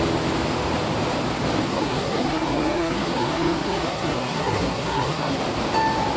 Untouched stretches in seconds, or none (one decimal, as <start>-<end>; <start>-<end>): 0.0-1.7; 5.4-6.2